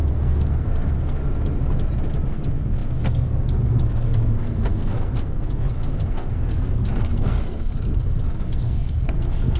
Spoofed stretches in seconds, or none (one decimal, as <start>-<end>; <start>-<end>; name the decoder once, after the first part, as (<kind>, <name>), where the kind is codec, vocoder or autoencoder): 0.0-1.2 (codec, SNAC); 2.3-9.6